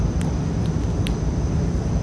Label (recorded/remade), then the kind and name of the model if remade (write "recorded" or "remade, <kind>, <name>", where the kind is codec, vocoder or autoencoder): recorded